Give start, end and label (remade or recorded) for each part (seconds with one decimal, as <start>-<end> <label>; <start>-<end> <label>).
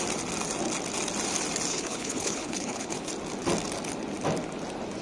0.0-1.7 recorded; 1.7-3.1 remade; 3.1-5.0 recorded